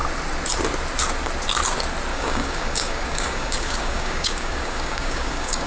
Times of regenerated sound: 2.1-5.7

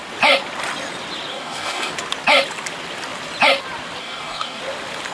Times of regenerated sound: 1.3-1.9; 4.0-4.6

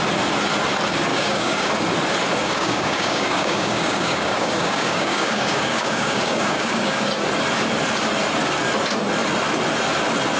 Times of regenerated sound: 1.1-1.7; 2.4-7.1

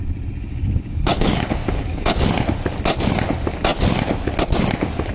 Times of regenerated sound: 0.5-2.2

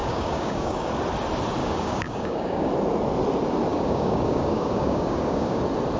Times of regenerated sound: 0.0-0.9; 1.6-2.7; 3.7-5.6

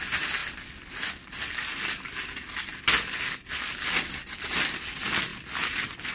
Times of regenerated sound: none

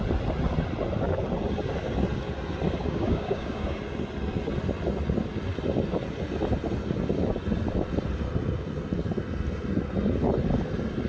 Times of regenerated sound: 2.8-3.8

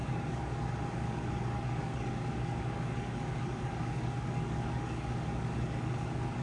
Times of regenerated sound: 0.0-6.4